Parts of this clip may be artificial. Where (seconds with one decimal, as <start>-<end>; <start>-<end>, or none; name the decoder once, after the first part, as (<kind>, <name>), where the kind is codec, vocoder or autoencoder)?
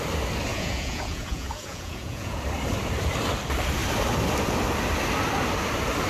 0.5-2.4 (vocoder, Vocos)